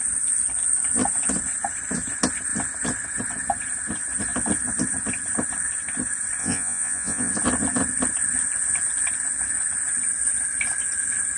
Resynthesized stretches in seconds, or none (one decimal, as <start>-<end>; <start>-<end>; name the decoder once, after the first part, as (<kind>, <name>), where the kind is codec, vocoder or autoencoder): 6.4-7.3 (vocoder, Vocos)